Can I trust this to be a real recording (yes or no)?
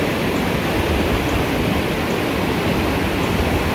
yes